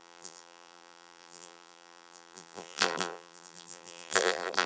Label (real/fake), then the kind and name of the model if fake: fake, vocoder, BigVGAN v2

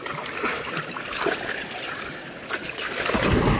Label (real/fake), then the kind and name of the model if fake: real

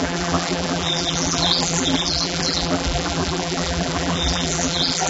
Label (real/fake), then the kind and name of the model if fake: fake, vocoder, BigVGAN v2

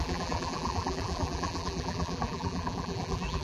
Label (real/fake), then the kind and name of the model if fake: fake, vocoder, BigVGAN v2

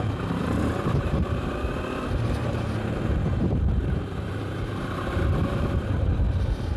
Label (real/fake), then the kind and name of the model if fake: fake, vocoder, BigVGAN v2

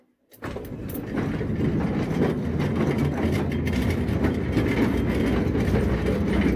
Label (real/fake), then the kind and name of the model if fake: real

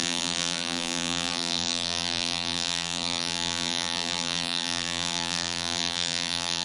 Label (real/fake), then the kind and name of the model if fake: fake, vocoder, BigVGAN v2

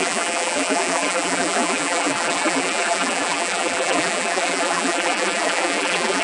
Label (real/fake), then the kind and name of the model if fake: fake, vocoder, BigVGAN v2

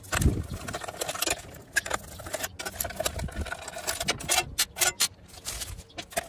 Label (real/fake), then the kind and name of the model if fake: real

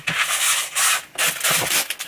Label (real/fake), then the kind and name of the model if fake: real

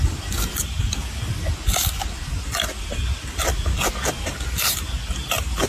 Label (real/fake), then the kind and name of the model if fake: real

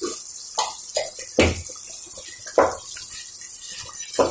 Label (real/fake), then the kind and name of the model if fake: real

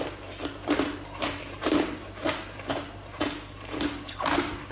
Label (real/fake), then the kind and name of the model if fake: fake, vocoder, BigVGAN v2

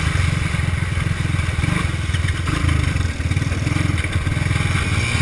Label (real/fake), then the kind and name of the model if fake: real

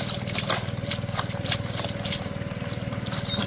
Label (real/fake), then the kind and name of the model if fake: real